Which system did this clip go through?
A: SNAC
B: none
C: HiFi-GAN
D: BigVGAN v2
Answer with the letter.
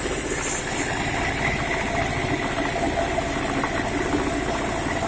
B